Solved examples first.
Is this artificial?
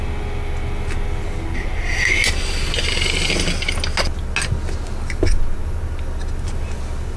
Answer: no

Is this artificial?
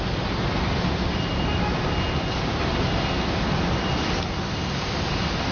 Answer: no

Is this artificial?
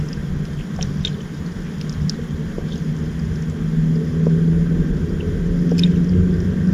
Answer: no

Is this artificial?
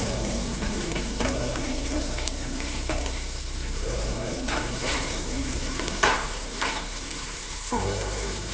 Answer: yes